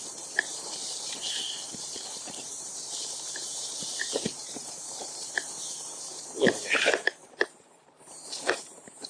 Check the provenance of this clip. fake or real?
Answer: fake